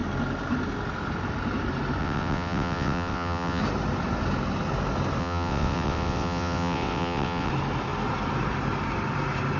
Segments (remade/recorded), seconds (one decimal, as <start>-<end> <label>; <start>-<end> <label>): 0.0-2.0 recorded; 2.0-3.6 remade; 3.6-5.2 recorded; 5.2-7.5 remade; 7.5-9.6 recorded

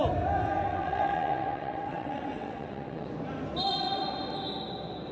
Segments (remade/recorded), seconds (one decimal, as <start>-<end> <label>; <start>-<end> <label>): 0.0-0.7 recorded; 0.7-3.1 remade; 3.1-5.1 recorded

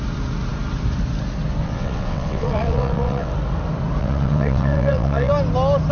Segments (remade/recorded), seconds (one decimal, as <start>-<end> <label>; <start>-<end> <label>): 0.0-1.6 recorded; 1.6-3.3 remade; 3.3-4.0 recorded; 4.0-5.3 remade; 5.3-5.9 recorded

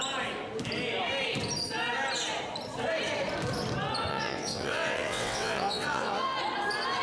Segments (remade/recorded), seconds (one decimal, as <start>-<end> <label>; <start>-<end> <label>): 0.0-4.1 recorded; 4.1-6.4 remade; 6.4-7.0 recorded

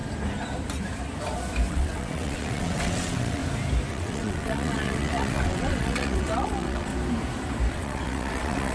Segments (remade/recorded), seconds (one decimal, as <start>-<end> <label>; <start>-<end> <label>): 0.0-1.7 recorded; 1.7-3.4 remade; 3.4-3.9 recorded; 3.9-6.9 remade; 6.9-7.7 recorded; 7.7-8.7 remade